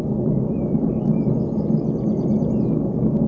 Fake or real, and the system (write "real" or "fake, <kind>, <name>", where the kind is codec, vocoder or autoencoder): real